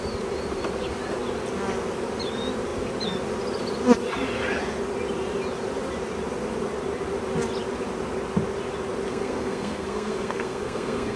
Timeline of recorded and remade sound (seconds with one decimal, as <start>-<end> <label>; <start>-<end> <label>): 0.0-9.1 recorded; 9.1-11.2 remade